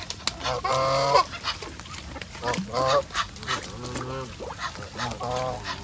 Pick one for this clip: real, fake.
real